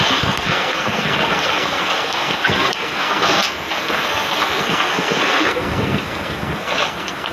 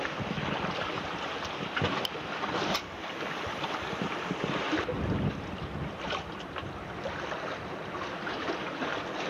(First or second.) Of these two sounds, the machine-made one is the first